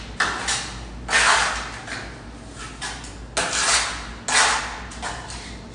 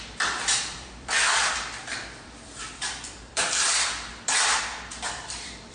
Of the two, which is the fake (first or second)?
second